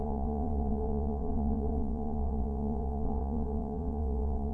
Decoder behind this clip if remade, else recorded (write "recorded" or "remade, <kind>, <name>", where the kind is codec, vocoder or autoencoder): remade, vocoder, WaveNeXt